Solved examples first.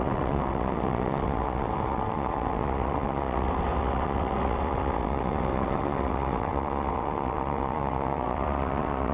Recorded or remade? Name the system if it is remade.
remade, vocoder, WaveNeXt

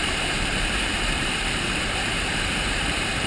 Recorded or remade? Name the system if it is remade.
remade, vocoder, BigVGAN v2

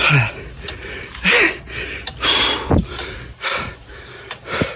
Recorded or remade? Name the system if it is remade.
recorded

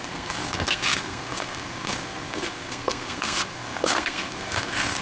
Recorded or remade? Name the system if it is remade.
remade, codec, SNAC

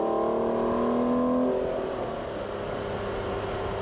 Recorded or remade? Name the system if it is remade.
recorded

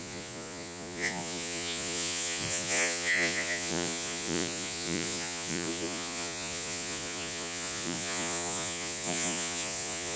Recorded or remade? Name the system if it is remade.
remade, vocoder, Vocos